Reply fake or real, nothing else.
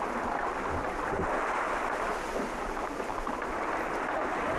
real